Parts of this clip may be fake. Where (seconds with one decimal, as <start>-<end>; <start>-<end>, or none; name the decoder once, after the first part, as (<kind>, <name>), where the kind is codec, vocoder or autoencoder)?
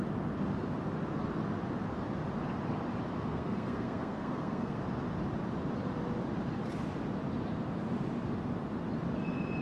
3.3-4.8 (codec, SNAC)